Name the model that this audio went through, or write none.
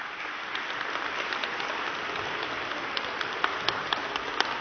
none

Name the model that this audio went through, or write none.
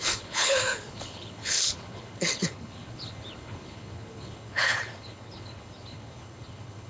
codec, HILCodec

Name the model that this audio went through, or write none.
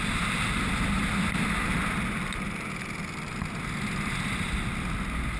none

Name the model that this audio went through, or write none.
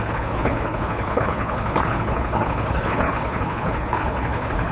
codec, HILCodec